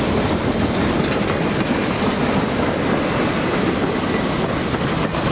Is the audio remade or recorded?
recorded